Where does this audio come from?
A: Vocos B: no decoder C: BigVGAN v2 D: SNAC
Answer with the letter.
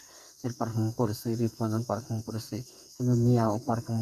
D